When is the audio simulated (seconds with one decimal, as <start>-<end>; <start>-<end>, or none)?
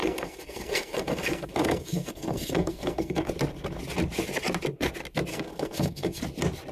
0.0-3.3; 5.3-6.2